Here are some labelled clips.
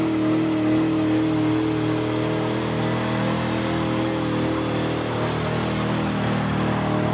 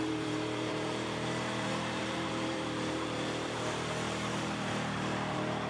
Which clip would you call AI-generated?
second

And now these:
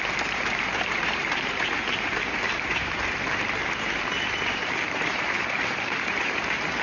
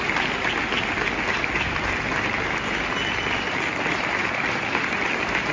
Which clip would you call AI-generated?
first